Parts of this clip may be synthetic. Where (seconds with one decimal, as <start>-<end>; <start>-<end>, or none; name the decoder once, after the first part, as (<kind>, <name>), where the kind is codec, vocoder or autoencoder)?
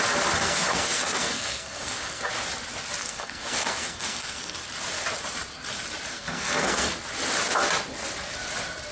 0.4-2.3 (codec, SNAC); 3.0-4.6; 6.1-6.9